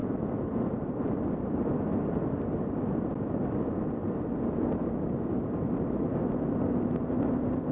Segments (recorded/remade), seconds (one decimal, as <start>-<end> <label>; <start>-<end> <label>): 0.0-7.7 recorded